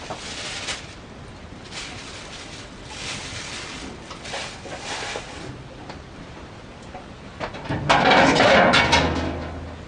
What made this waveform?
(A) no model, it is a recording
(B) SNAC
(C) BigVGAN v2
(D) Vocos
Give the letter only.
A